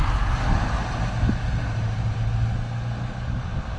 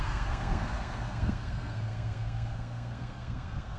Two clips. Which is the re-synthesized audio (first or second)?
second